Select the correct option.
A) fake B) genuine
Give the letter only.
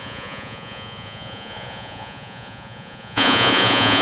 A